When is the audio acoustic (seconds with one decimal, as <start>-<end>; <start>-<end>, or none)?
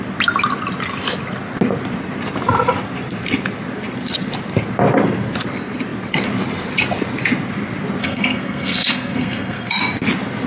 0.0-8.0; 9.8-10.5